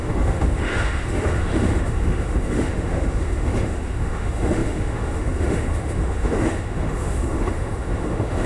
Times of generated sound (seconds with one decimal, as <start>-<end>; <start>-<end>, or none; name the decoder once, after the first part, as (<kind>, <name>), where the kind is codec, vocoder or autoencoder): 0.0-8.5 (autoencoder, DAC-VAE)

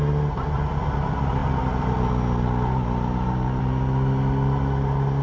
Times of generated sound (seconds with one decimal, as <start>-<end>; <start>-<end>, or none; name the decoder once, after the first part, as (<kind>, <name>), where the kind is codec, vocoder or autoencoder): none

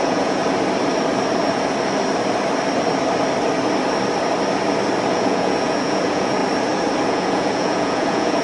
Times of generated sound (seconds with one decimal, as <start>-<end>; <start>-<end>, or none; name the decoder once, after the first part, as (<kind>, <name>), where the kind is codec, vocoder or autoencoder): 0.0-0.4 (vocoder, Vocos); 5.1-6.4; 7.1-8.4

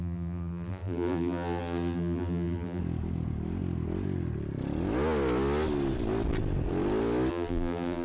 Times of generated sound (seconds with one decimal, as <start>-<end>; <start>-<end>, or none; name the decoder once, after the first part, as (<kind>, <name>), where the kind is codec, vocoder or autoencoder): 0.0-2.8 (vocoder, BigVGAN v2); 7.3-8.0